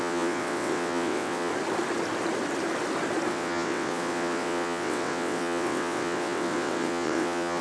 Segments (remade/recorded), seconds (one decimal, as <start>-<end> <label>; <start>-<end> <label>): 0.0-1.5 remade; 1.5-3.3 recorded; 3.3-7.6 remade